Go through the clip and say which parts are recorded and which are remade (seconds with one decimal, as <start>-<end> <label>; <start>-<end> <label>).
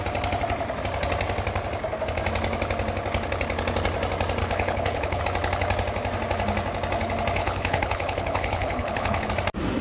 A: 0.0-4.4 recorded; 4.4-5.2 remade; 5.2-7.4 recorded; 7.4-9.3 remade; 9.3-9.8 recorded